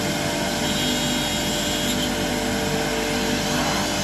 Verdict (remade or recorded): recorded